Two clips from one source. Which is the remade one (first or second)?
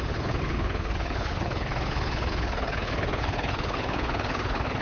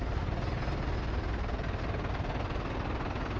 first